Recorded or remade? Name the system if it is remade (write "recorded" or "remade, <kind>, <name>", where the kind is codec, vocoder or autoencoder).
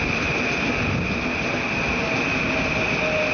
recorded